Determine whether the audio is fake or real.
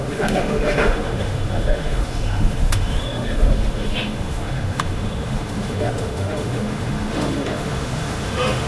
fake